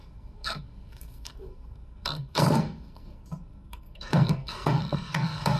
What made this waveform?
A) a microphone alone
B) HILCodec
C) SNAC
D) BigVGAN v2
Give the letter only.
C